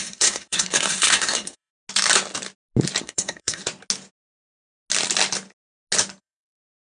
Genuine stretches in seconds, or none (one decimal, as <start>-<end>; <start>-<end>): 1.7-3.0; 3.6-6.2